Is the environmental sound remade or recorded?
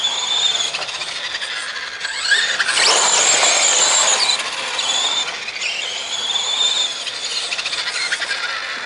recorded